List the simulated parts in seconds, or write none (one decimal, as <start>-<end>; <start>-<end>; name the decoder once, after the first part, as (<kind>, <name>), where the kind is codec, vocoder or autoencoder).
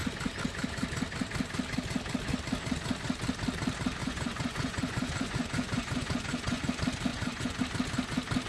4.0-6.6 (vocoder, Vocos); 7.1-7.6